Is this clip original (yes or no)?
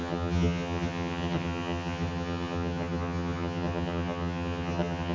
no